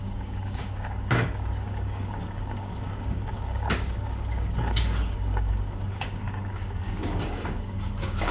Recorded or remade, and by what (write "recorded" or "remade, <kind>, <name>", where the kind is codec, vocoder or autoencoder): remade, codec, DAC